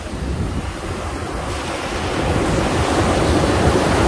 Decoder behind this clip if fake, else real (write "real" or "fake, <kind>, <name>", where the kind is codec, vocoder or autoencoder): real